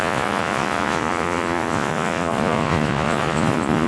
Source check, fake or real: fake